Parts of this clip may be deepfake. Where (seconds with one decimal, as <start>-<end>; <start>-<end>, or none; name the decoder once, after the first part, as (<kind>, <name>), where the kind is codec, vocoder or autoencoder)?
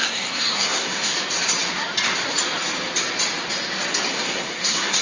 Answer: 0.0-1.1 (codec, SNAC); 4.1-5.0